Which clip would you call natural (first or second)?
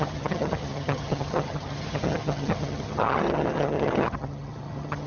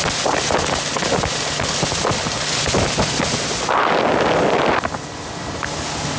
second